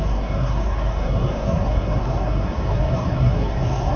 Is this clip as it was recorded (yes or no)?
no